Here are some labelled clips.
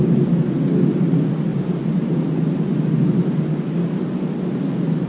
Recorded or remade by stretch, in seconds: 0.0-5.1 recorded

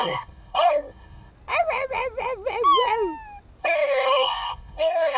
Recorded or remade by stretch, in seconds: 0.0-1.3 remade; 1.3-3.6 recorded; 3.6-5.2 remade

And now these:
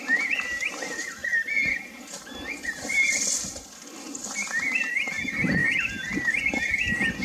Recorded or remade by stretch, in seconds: 0.0-7.2 recorded

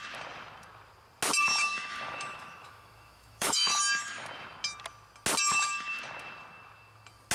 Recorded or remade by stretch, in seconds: 0.0-1.6 recorded; 1.6-3.8 remade; 3.8-7.3 recorded

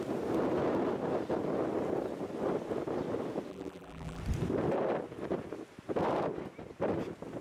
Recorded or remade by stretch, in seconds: 0.0-3.5 recorded; 3.5-4.2 remade; 4.2-7.4 recorded